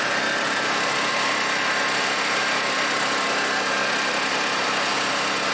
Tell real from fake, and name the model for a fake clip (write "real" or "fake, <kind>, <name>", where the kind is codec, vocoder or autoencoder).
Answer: real